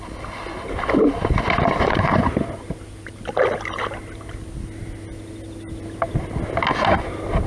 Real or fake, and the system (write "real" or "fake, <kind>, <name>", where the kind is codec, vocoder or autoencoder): real